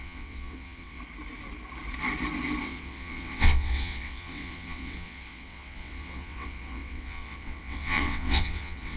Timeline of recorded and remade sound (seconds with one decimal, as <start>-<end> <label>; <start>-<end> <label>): 0.0-1.0 remade; 1.0-2.6 recorded; 2.6-9.0 remade